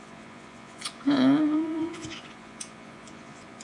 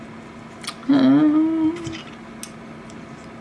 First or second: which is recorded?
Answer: second